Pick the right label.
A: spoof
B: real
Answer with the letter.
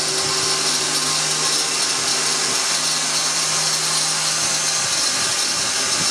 B